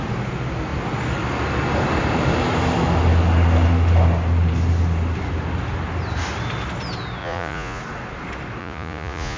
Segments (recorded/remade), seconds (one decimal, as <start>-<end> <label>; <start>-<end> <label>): 0.0-7.2 recorded; 7.2-7.8 remade; 7.8-8.6 recorded; 8.6-9.4 remade